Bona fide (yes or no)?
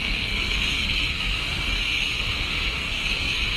no